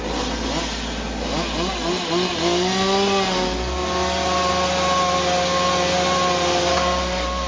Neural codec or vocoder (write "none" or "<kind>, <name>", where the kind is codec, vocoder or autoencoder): none